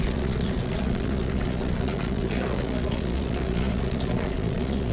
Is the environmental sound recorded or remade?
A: remade